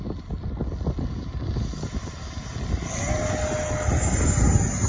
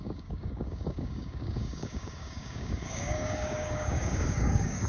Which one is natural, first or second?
first